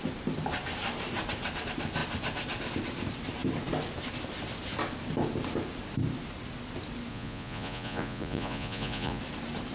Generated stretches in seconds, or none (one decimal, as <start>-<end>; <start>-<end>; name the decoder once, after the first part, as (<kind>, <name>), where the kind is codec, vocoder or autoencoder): 7.1-9.2 (vocoder, Vocos)